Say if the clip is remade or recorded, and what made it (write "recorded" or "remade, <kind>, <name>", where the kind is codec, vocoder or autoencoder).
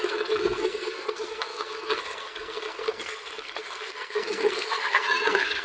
remade, codec, SNAC